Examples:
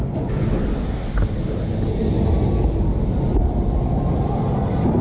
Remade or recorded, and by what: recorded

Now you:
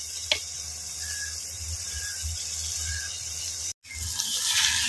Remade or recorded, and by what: recorded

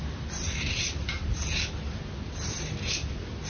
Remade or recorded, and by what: recorded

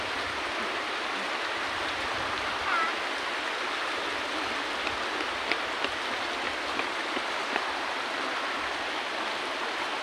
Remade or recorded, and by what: recorded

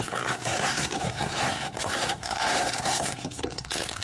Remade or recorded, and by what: remade, codec, SNAC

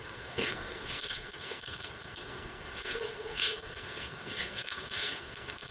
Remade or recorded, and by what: remade, codec, SNAC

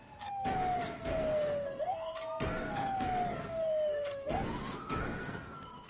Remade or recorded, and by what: remade, codec, SNAC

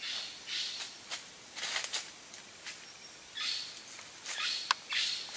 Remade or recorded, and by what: recorded